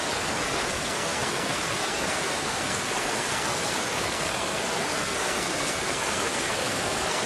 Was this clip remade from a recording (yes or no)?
yes